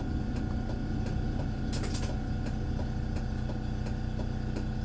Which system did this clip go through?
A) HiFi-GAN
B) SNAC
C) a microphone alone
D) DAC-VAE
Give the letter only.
C